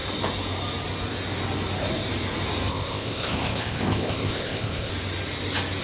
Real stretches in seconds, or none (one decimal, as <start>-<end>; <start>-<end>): 0.0-2.7; 4.9-5.8

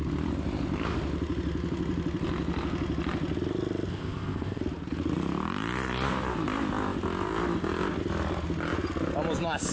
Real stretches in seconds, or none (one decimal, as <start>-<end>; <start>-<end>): 0.0-3.9; 4.6-9.7

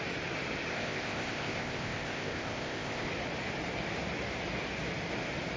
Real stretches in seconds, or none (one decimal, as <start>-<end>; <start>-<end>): 0.0-0.7; 3.1-5.6

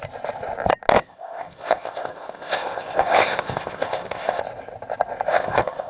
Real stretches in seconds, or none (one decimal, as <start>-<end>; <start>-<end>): 0.0-0.9; 4.4-5.3

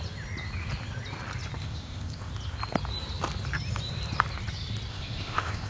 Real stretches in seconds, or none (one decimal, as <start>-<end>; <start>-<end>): 0.0-1.6; 2.3-4.9

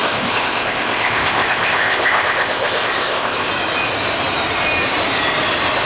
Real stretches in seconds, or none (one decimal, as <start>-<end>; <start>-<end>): 3.5-5.8

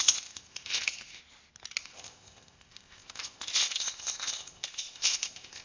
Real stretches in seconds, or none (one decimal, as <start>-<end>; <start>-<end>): 1.2-1.8